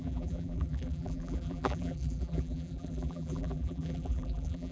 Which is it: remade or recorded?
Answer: remade